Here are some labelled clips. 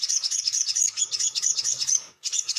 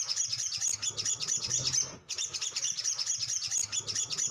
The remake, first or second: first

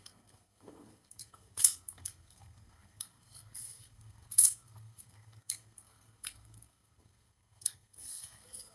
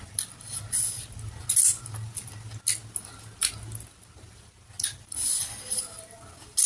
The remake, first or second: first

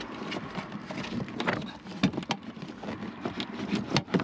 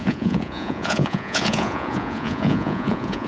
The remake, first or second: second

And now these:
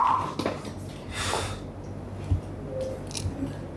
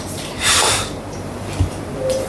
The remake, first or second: second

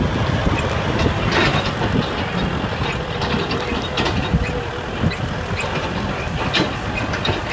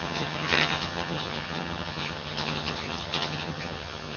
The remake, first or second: second